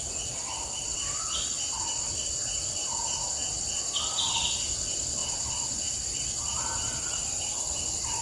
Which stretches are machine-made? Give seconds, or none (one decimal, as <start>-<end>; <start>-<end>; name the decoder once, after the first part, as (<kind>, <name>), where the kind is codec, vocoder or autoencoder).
none